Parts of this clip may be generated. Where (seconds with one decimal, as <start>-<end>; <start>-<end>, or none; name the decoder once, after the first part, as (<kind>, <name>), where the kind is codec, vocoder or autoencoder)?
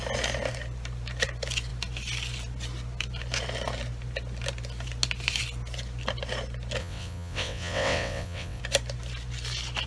6.8-8.6 (vocoder, WaveNeXt)